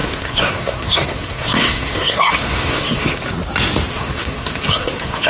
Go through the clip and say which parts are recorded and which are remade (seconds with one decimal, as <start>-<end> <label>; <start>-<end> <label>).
0.0-3.2 remade; 3.2-3.9 recorded; 3.9-5.3 remade